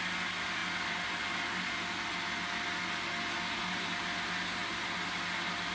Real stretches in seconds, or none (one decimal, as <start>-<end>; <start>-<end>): 0.0-5.7